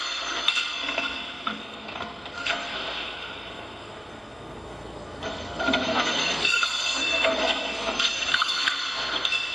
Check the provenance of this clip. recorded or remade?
remade